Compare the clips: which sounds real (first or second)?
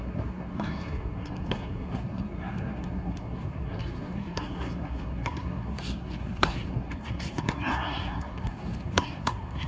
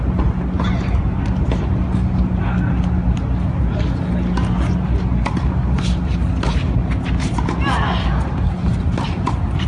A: second